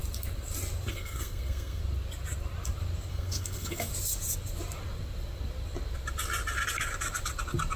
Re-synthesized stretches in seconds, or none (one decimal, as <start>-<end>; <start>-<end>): 0.9-1.8; 3.1-3.9

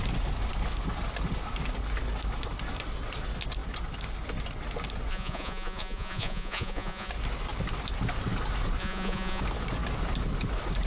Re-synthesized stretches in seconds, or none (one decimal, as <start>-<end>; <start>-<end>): 5.1-7.1; 8.8-9.4

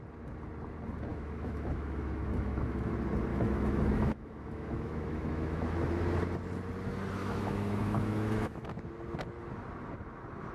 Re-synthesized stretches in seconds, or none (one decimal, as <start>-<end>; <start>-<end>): 1.1-2.9; 3.3-5.9; 7.2-8.7